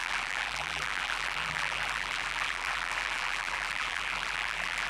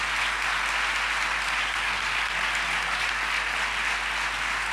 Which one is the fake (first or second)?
first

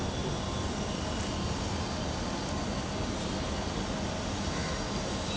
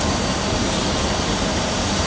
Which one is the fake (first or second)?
second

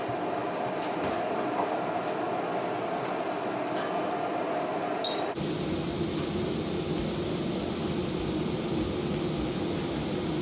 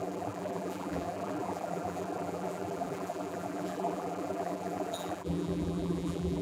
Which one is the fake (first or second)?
second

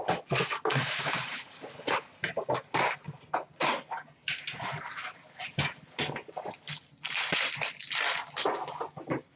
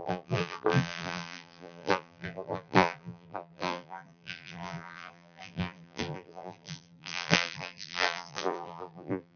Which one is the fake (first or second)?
second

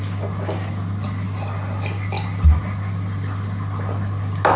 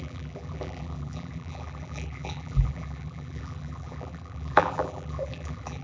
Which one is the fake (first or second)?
second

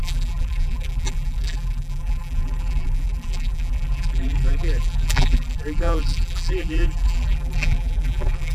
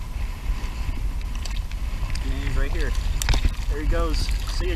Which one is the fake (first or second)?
first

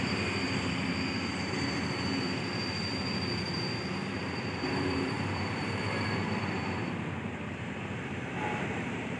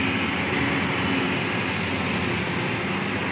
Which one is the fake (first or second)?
first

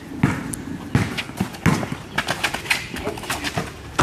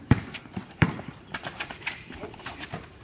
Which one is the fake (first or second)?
second